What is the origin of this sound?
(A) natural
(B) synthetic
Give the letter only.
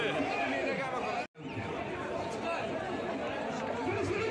A